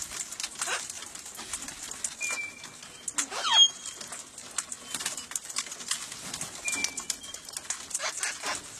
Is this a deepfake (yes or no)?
no